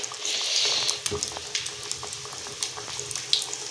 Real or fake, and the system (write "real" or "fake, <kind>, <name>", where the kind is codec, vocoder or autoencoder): real